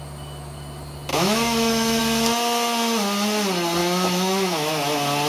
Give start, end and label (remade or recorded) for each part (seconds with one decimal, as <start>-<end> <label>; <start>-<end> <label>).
0.0-1.1 recorded; 1.1-2.0 remade; 2.0-3.8 recorded; 3.8-4.7 remade; 4.7-5.3 recorded